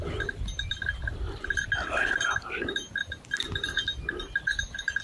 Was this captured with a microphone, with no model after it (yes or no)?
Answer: no